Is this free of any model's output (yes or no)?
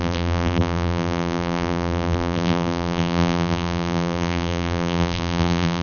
no